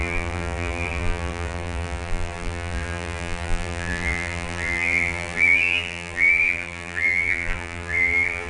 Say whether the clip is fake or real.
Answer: fake